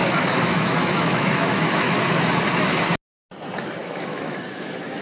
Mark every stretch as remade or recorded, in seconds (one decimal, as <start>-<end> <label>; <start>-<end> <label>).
0.0-2.3 remade; 2.3-3.8 recorded; 3.8-5.0 remade

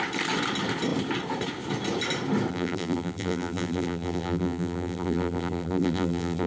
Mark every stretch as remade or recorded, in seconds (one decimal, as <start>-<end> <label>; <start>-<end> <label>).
0.0-2.5 recorded; 2.5-6.5 remade

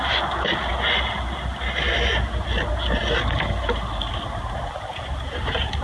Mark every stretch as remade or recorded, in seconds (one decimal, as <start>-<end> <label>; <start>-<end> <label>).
0.0-5.8 recorded

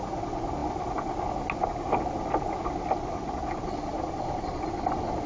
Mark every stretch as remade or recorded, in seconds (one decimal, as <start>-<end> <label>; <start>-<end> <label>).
0.0-5.3 recorded

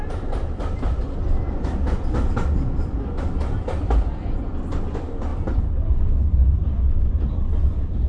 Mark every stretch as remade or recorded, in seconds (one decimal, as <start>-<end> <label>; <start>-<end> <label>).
0.0-5.3 recorded; 5.3-5.9 remade; 5.9-8.1 recorded

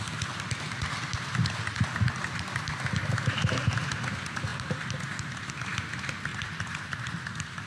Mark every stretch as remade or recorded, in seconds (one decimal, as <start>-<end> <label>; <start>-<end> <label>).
0.0-4.5 recorded; 4.5-5.5 remade; 5.5-6.3 recorded; 6.3-7.7 remade

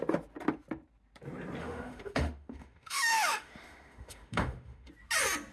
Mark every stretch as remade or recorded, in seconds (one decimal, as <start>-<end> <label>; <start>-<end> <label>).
0.0-1.6 recorded; 1.6-4.9 remade; 4.9-5.5 recorded